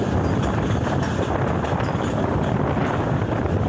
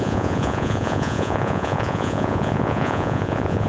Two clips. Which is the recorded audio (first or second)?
first